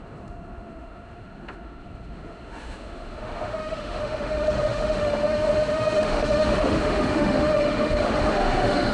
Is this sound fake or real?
fake